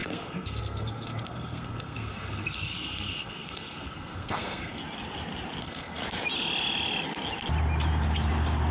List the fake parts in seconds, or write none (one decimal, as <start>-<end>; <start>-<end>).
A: 0.0-4.8; 5.6-6.0